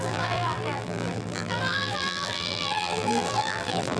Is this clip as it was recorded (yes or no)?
no